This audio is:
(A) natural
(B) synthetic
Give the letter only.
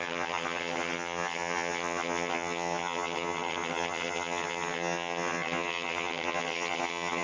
B